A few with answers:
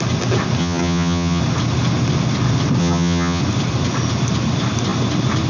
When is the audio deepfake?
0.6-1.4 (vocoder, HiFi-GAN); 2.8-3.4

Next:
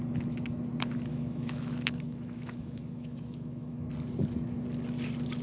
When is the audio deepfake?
1.1-3.9 (autoencoder, DAC-VAE)

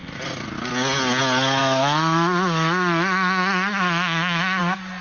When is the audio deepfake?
1.6-4.6 (autoencoder, DAC-VAE)

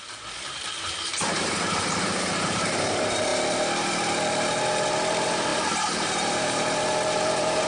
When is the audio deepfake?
0.0-3.3 (vocoder, BigVGAN v2); 3.9-7.7

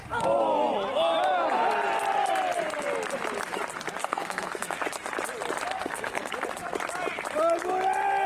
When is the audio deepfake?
4.0-4.8 (codec, SNAC); 5.7-6.3

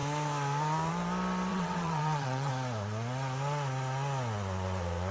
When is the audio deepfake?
1.5-2.5 (vocoder, WaveNeXt)